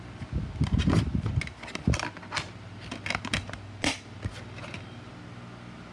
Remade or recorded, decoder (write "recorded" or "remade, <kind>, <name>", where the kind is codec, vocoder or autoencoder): recorded